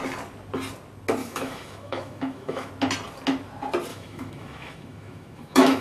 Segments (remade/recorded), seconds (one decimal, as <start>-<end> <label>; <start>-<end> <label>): 0.0-1.2 recorded; 1.2-2.7 remade; 2.7-3.9 recorded; 3.9-5.8 remade